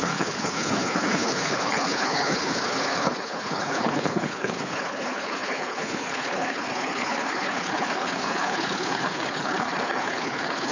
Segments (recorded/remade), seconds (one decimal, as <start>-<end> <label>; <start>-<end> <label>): 0.0-10.7 remade